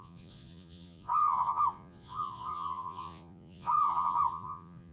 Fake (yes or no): yes